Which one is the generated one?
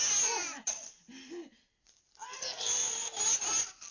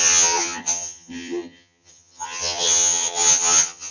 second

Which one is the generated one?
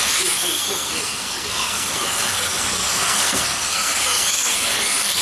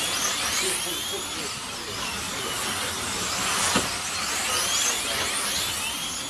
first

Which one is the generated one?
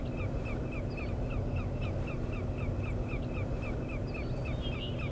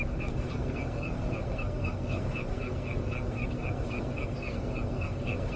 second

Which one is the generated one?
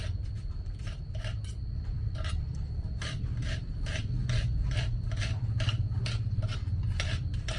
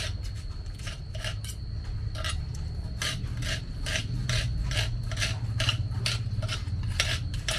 first